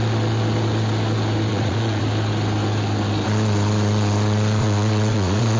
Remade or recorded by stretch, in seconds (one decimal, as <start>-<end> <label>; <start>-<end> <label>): 0.0-1.5 recorded; 1.5-2.0 remade; 2.0-4.6 recorded; 4.6-5.6 remade